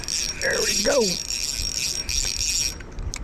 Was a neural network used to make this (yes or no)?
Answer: no